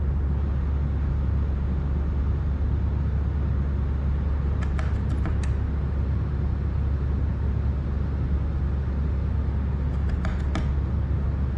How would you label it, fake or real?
real